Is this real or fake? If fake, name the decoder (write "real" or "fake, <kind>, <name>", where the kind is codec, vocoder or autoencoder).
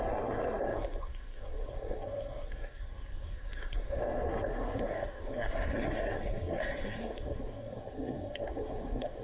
fake, codec, SNAC